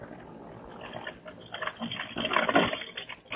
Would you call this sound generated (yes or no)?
no